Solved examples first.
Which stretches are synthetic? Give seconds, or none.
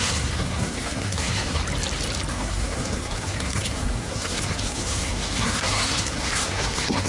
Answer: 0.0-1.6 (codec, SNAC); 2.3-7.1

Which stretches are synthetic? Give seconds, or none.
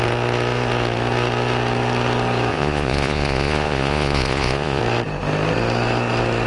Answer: 2.5-4.8 (vocoder, Vocos)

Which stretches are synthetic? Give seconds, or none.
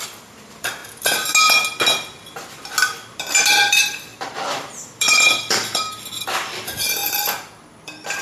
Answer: 0.0-0.8 (vocoder, BigVGAN v2); 3.2-8.2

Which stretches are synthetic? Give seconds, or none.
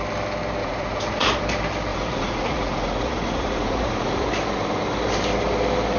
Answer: 0.6-1.4 (vocoder, Vocos); 1.9-4.3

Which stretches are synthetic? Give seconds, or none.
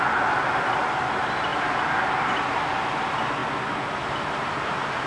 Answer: none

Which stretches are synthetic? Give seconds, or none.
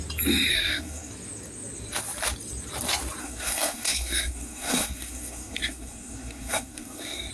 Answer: 0.5-1.1 (codec, SNAC); 3.2-7.3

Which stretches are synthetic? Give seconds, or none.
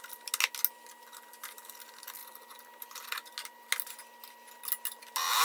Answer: 2.2-2.7 (vocoder, BigVGAN v2)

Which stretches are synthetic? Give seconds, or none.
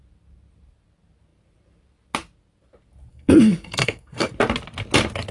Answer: 3.1-4.3 (codec, SNAC)